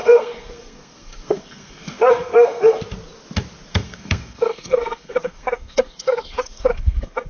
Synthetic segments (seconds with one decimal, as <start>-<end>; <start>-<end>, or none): 0.0-2.8; 3.7-7.3